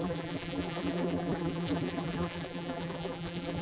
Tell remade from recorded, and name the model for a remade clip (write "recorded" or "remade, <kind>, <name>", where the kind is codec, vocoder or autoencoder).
remade, vocoder, BigVGAN v2